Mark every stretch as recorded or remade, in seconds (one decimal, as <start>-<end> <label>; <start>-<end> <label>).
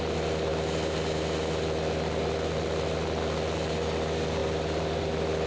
0.0-5.5 recorded